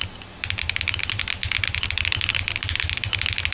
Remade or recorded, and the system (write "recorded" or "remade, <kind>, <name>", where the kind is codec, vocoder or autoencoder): recorded